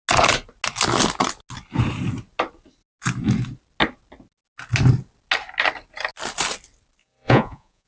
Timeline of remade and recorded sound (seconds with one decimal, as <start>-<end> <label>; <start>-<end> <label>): 0.0-7.0 recorded; 7.0-7.9 remade